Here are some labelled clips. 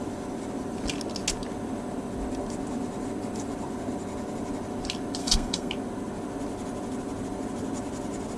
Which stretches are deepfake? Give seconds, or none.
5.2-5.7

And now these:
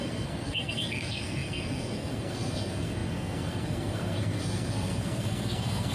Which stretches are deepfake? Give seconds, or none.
0.0-5.9

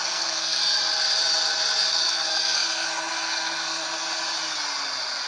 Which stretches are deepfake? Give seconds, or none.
0.0-0.6; 1.9-3.8

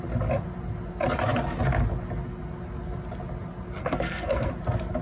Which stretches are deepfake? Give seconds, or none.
3.8-4.5